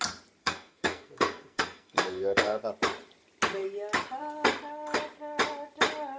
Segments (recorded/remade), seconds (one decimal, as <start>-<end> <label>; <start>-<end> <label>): 0.0-0.4 recorded; 0.4-2.6 remade; 2.6-6.2 recorded